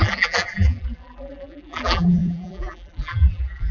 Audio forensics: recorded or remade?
remade